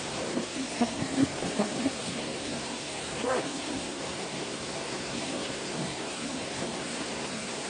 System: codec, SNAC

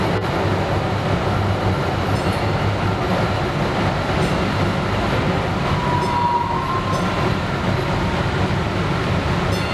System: none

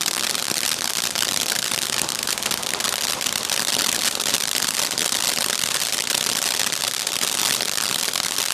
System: none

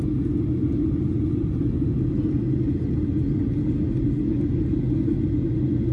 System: none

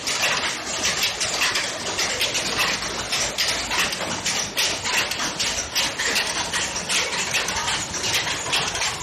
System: none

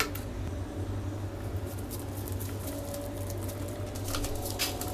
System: none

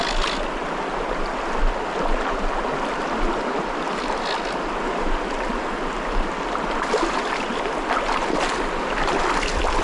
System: none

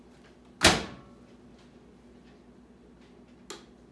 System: none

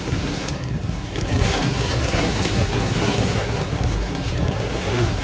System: codec, SNAC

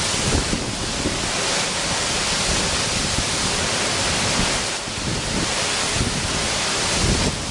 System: none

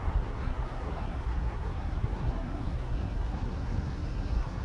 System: codec, SNAC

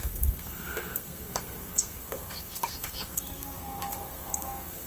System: codec, SNAC